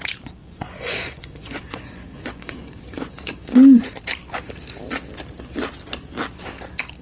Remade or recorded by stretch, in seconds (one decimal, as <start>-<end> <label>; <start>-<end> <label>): 0.0-0.4 recorded; 0.4-4.0 remade; 4.0-7.0 recorded